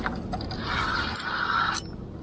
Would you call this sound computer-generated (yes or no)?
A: no